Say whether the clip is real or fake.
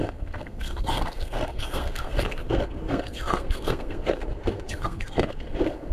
fake